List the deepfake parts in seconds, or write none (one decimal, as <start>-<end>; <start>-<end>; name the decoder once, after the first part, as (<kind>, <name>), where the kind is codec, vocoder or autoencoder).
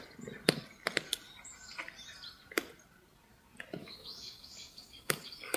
3.8-5.6 (codec, DAC)